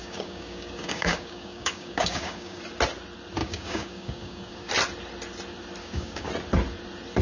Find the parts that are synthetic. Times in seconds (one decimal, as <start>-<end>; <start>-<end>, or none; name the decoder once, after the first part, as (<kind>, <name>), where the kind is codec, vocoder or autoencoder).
0.0-2.6 (codec, DAC); 3.4-4.7; 5.8-6.3